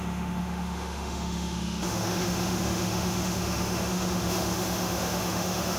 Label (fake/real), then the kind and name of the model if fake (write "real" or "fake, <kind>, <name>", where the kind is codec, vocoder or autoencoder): fake, autoencoder, DAC-VAE